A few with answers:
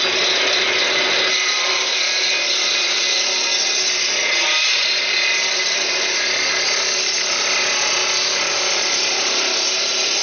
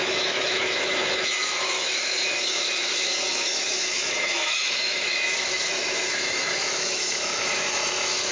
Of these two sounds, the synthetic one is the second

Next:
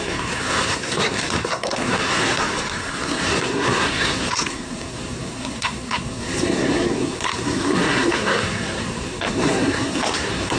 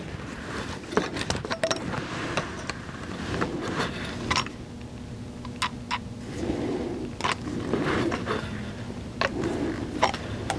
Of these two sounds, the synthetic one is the first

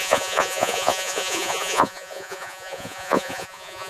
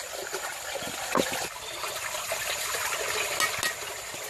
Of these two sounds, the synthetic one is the first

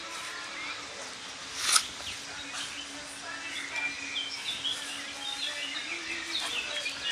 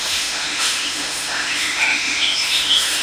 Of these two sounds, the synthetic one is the second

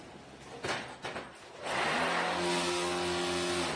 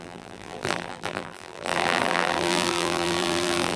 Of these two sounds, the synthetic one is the second